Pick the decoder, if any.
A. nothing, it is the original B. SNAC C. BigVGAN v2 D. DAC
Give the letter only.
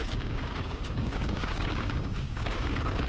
D